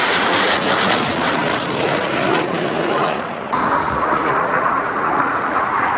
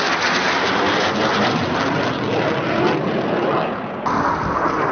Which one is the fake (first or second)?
first